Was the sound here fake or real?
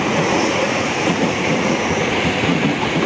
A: fake